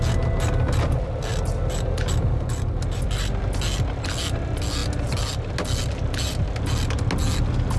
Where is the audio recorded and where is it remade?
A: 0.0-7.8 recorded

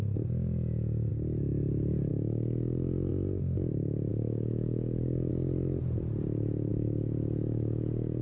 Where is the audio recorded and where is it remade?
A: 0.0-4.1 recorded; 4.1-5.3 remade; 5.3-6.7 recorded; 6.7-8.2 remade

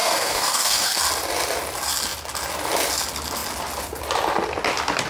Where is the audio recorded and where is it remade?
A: 0.0-1.0 remade; 1.0-5.1 recorded

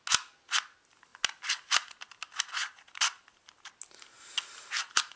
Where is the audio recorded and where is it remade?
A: 0.0-5.2 recorded

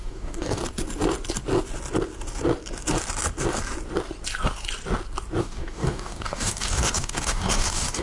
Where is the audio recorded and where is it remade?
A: 0.0-0.6 remade; 0.6-5.4 recorded; 5.4-8.0 remade

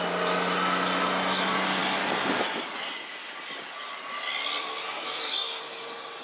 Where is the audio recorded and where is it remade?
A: 0.0-4.8 recorded; 4.8-5.6 remade; 5.6-6.2 recorded

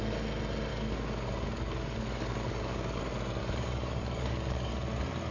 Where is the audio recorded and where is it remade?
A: 0.0-0.7 recorded; 0.7-3.0 remade; 3.0-3.4 recorded; 3.4-4.7 remade; 4.7-5.3 recorded

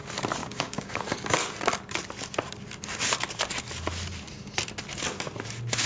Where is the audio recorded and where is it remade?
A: 0.0-0.4 recorded; 0.4-1.0 remade; 1.0-5.9 recorded